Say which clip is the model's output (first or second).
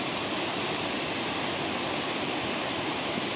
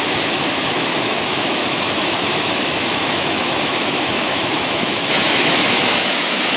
second